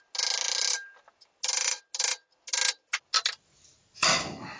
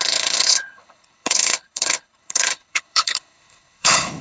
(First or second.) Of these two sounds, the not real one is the second